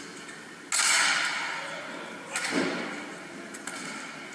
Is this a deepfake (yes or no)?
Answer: no